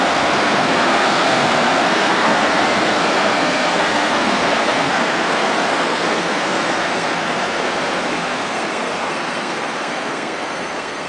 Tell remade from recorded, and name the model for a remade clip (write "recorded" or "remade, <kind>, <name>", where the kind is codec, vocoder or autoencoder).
remade, codec, SNAC